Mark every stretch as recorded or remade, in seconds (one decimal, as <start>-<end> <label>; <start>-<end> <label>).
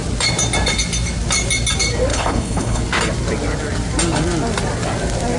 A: 0.0-2.1 recorded; 2.1-2.8 remade; 2.8-5.4 recorded